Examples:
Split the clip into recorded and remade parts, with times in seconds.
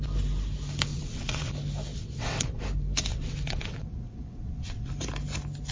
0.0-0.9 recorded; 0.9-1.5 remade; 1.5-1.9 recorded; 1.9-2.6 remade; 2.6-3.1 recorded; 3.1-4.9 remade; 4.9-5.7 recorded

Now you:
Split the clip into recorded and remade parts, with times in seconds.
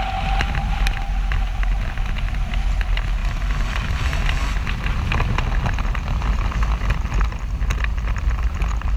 0.0-9.0 recorded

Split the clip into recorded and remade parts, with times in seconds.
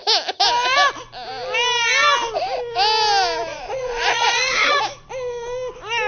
0.0-3.5 recorded; 3.5-4.8 remade; 4.8-6.1 recorded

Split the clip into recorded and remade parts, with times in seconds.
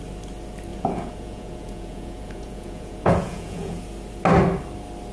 0.0-0.7 recorded; 0.7-3.8 remade; 3.8-5.1 recorded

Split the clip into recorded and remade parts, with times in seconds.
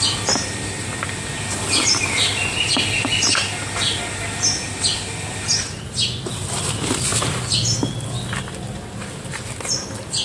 0.0-10.2 recorded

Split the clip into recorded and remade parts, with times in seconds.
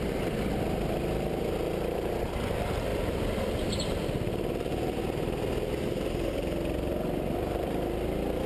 0.0-2.9 recorded; 2.9-4.7 remade; 4.7-8.5 recorded